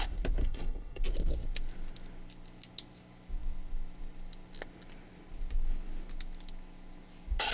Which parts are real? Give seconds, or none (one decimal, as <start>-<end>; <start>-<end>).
0.0-0.4; 1.0-7.5